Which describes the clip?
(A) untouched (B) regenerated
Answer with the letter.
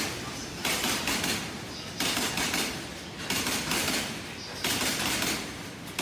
A